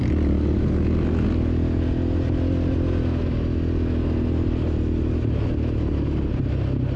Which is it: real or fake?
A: real